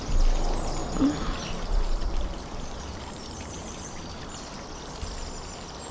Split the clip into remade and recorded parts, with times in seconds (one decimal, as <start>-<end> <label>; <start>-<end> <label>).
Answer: 0.0-0.8 recorded; 0.8-4.3 remade; 4.3-5.9 recorded